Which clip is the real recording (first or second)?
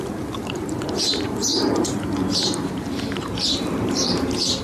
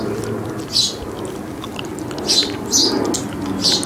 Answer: second